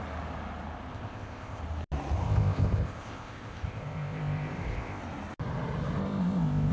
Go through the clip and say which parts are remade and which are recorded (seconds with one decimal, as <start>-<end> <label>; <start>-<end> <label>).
0.0-0.9 recorded; 0.9-1.6 remade; 1.6-2.2 recorded; 2.2-5.0 remade; 5.0-6.0 recorded; 6.0-6.7 remade